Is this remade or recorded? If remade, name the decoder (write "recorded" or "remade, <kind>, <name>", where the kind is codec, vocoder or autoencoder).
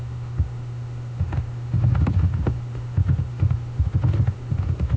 remade, autoencoder, DAC-VAE